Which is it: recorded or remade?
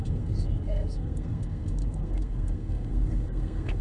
remade